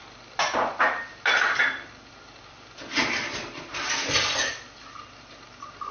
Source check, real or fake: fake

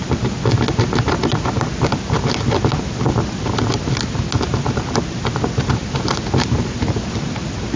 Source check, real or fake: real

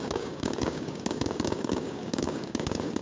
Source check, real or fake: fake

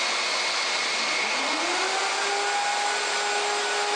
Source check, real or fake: real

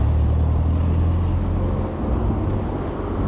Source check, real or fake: real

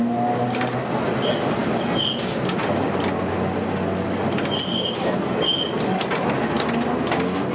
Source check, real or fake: real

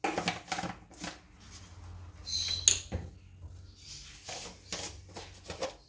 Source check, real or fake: real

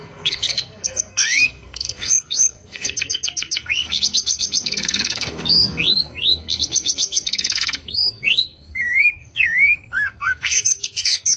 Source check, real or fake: fake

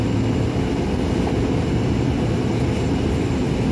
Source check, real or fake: real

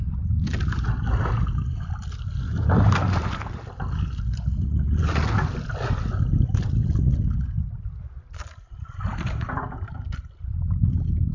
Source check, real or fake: real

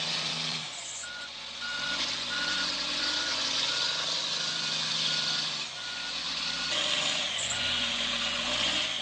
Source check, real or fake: fake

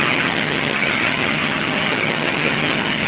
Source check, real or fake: fake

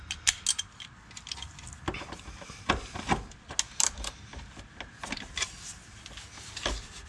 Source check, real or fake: real